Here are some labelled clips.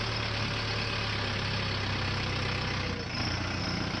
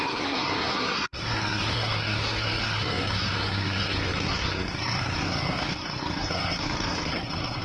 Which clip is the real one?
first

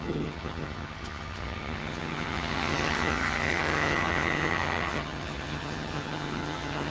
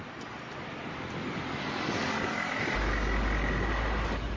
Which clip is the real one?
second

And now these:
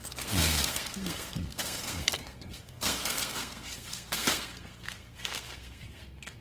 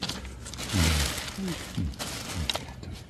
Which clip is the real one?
second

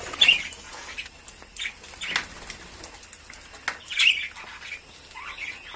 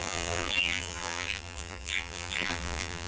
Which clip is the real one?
first